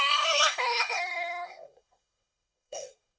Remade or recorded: remade